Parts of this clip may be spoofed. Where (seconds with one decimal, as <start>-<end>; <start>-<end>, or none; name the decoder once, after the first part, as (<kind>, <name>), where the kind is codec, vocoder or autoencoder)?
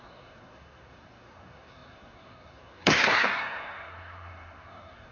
0.0-5.1 (codec, SNAC)